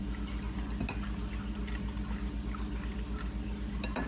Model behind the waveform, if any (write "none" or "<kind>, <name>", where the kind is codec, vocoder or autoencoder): none